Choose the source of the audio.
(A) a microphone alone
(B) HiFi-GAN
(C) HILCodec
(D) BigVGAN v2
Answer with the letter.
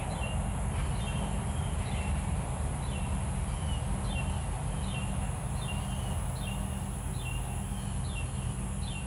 A